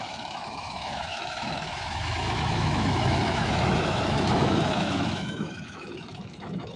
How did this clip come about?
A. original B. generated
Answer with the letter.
B